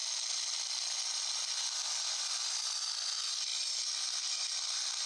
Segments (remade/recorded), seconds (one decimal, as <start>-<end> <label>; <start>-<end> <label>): 0.0-5.1 recorded